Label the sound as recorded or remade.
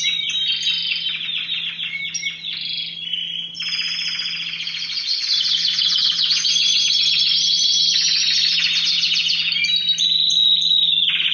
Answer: recorded